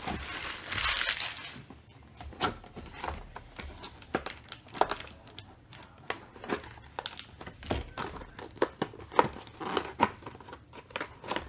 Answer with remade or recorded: recorded